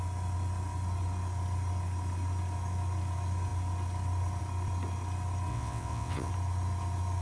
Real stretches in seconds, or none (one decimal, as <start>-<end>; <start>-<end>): 0.0-5.5; 6.3-7.2